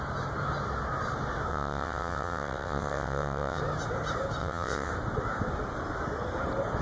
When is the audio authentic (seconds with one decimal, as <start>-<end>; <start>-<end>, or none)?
0.0-1.5; 3.6-4.4; 4.9-6.8